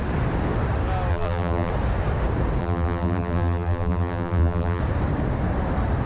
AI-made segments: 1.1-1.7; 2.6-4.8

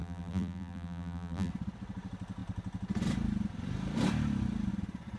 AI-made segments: 0.0-1.5

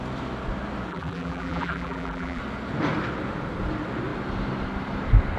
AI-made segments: 0.9-2.4

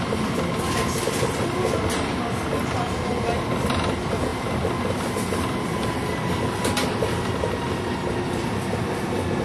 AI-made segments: none